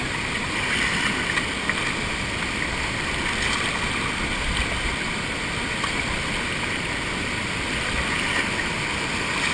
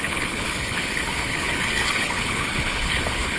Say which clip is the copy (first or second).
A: second